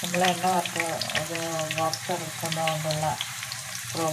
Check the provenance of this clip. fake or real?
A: fake